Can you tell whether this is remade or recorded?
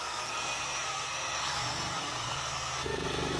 remade